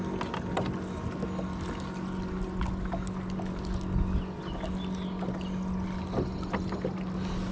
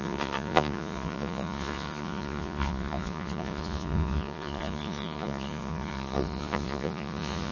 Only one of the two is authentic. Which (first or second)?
first